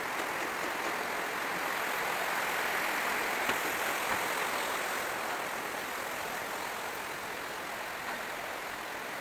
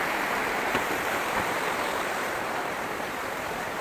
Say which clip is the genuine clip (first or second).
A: first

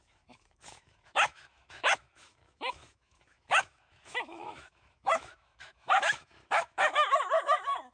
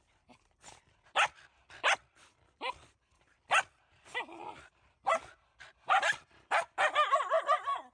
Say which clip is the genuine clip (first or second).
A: second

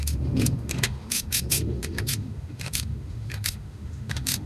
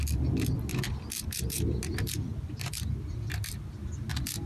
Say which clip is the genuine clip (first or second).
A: second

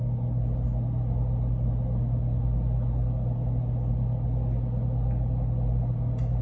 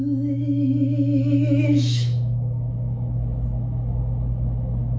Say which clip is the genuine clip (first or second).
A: first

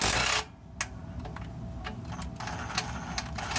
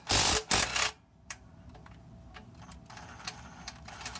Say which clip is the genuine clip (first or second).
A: first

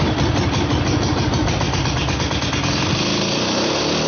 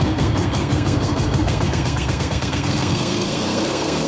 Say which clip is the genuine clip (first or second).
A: first